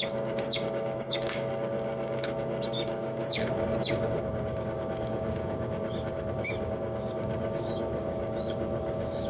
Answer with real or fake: fake